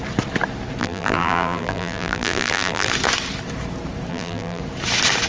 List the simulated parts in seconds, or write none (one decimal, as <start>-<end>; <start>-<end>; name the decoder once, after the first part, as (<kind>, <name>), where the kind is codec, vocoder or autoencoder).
0.8-2.9 (vocoder, BigVGAN v2); 4.1-4.6